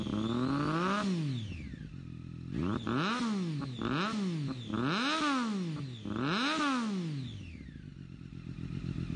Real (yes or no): yes